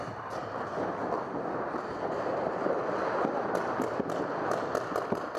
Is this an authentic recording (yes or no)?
yes